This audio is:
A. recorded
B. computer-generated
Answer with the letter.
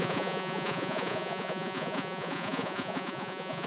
B